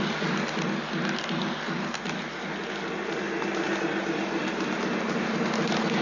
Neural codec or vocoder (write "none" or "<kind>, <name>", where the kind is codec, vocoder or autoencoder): none